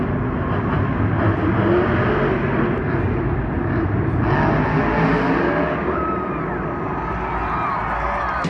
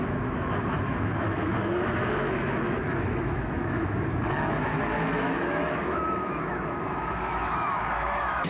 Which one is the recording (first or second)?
first